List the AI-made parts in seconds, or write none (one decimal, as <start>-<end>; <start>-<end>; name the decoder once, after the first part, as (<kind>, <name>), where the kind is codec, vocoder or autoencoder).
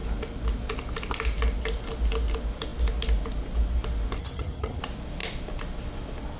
4.2-4.8 (vocoder, HiFi-GAN)